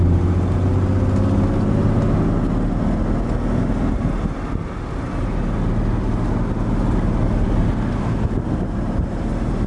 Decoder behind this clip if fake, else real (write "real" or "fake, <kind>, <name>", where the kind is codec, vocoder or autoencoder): real